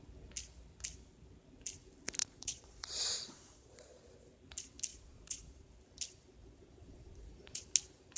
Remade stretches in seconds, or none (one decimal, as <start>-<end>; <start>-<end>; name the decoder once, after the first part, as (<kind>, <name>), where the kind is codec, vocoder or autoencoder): 2.2-4.0 (vocoder, Vocos); 4.9-5.7; 6.4-7.6

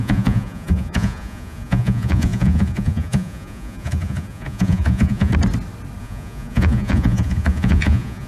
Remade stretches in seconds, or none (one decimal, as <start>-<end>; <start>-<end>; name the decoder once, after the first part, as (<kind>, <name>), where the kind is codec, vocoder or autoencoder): 0.0-5.3 (vocoder, Vocos); 6.0-8.3

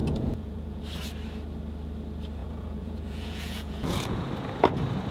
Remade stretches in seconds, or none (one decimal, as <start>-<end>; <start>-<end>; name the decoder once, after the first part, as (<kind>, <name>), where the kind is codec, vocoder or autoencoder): 0.0-0.8 (vocoder, Vocos); 2.4-4.3

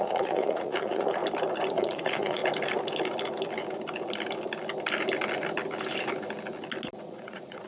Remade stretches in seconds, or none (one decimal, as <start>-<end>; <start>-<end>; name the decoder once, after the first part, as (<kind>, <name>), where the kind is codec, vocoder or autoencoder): 0.0-1.2 (vocoder, Vocos); 1.7-2.4; 7.0-7.7

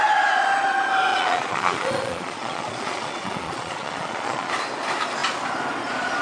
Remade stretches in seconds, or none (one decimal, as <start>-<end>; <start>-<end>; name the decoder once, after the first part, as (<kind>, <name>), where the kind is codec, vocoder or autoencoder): 1.1-4.5 (vocoder, Vocos)